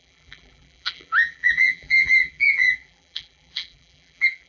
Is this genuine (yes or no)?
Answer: no